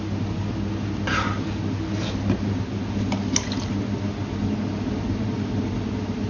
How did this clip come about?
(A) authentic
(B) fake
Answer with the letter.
A